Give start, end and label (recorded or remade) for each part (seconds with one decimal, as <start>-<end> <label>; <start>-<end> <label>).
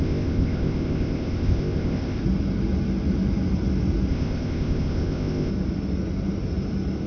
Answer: 0.0-2.2 remade; 2.2-4.1 recorded; 4.1-5.5 remade; 5.5-7.1 recorded